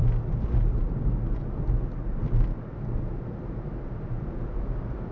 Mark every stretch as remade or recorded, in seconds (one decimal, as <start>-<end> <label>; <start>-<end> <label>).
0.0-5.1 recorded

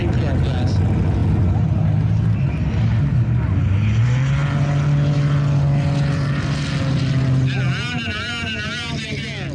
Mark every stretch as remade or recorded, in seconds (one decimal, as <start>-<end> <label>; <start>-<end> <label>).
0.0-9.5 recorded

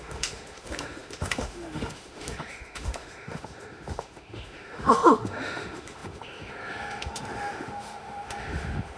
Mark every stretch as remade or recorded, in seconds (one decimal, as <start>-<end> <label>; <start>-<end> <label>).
0.0-9.0 remade